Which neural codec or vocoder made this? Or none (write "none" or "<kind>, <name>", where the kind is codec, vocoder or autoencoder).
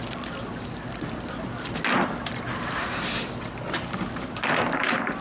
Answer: none